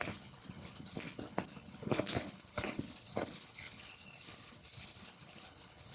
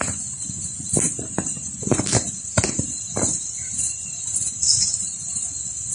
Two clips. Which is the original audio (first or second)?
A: second